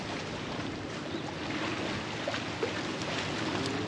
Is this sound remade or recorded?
recorded